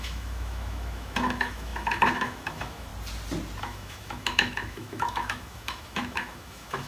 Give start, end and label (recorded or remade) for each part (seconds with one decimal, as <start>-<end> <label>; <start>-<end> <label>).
0.0-2.9 remade; 2.9-3.6 recorded; 3.6-6.9 remade